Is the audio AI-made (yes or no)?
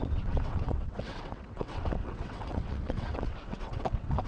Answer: yes